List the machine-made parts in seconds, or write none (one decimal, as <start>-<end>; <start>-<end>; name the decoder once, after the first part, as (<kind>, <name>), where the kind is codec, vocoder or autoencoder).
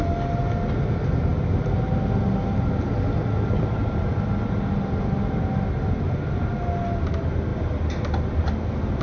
none